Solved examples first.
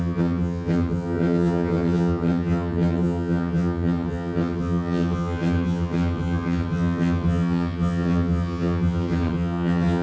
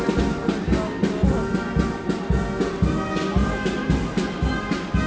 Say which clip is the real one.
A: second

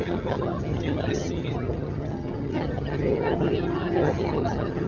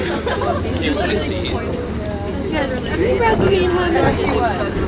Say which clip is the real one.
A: second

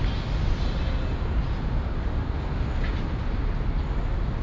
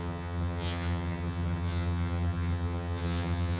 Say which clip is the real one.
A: first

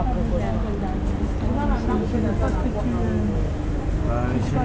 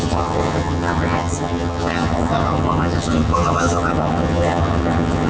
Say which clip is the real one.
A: first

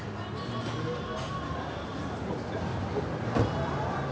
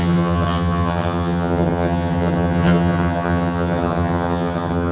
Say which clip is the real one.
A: first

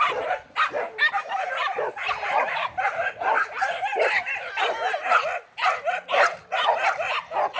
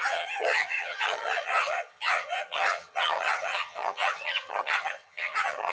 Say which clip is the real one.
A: first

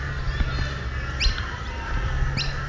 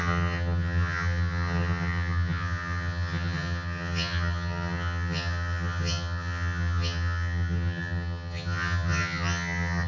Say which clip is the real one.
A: first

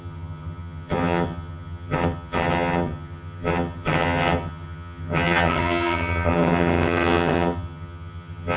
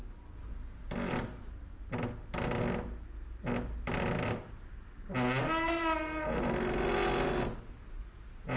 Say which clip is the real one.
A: second